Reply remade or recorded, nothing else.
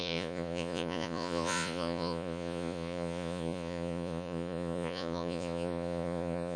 remade